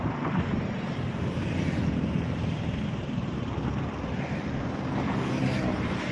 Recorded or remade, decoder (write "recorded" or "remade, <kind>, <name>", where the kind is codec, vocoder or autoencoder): remade, vocoder, BigVGAN v2